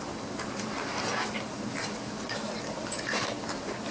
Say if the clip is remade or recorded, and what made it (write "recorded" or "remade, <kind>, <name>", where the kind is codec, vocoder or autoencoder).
recorded